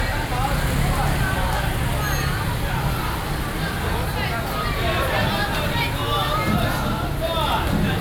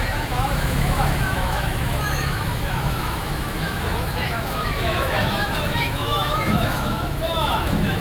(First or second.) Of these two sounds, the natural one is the first